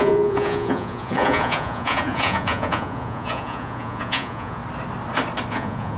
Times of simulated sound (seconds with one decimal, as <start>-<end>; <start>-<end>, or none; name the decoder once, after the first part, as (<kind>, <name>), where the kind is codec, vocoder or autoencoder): 0.0-4.6 (vocoder, Vocos); 5.5-6.0